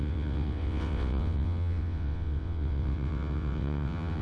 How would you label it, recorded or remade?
remade